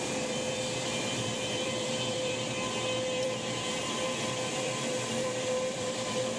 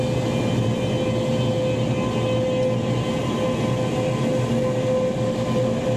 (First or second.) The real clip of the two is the second